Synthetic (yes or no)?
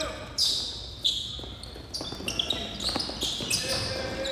no